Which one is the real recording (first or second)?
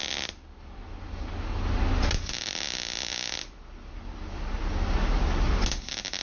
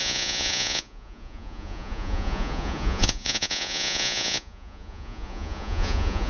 first